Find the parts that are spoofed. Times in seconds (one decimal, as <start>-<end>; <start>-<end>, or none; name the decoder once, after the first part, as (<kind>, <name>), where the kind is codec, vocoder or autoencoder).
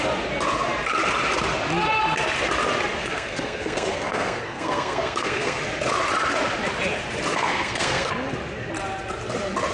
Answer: 3.0-5.6 (codec, SNAC); 7.3-8.1